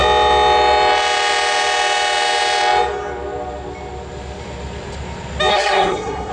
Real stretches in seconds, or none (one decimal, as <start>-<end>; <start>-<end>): 0.0-5.5